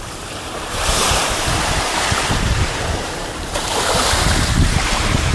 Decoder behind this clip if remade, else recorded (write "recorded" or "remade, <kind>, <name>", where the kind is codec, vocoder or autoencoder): remade, vocoder, BigVGAN v2